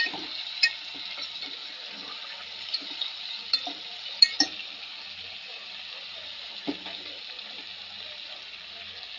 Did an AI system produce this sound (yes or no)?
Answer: no